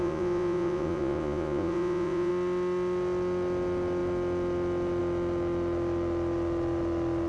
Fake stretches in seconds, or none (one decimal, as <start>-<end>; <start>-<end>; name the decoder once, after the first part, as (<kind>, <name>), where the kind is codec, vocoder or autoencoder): 0.0-2.3 (vocoder, Vocos)